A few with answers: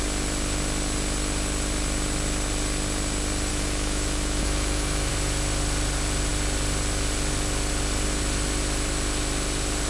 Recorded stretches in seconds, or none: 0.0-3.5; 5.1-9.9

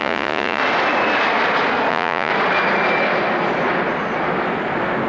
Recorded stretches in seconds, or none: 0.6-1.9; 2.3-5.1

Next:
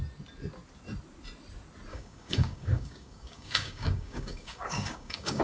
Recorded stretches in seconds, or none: 0.0-1.9

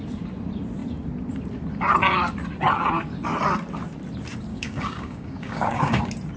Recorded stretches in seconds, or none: 0.0-4.5; 6.0-6.4

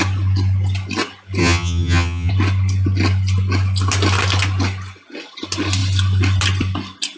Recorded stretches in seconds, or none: 0.0-1.4; 2.3-7.2

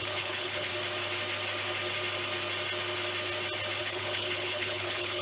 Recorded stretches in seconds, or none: 0.7-3.8

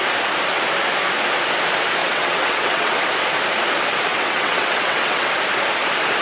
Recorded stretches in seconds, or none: 0.0-2.0; 3.0-4.1; 5.3-6.2

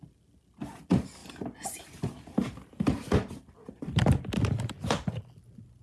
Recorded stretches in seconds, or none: 0.0-5.8